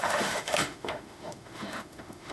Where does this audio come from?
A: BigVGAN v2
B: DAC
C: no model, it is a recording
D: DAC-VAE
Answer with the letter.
D